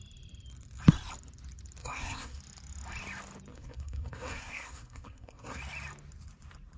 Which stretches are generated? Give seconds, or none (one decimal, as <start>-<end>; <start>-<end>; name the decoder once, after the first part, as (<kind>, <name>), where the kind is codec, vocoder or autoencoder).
1.8-2.4 (codec, SNAC); 3.5-5.6